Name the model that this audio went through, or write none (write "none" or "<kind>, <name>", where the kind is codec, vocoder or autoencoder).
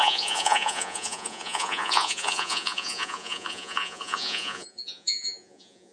vocoder, Vocos